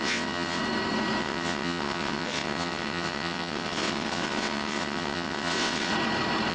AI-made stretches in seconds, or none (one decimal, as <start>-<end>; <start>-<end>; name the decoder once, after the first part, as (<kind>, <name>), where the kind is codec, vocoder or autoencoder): 0.0-0.6 (vocoder, WaveNeXt); 1.2-5.9